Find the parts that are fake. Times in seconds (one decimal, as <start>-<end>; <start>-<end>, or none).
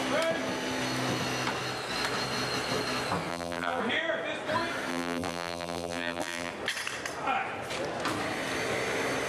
3.3-3.8; 4.9-6.5